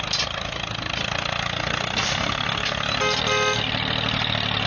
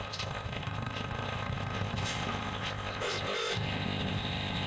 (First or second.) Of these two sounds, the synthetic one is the second